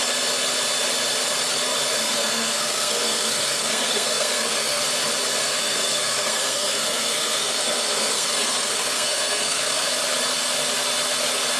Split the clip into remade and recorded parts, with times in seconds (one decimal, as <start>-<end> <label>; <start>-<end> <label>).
0.0-2.0 recorded; 2.0-4.8 remade; 4.8-5.4 recorded; 5.4-9.9 remade; 9.9-11.6 recorded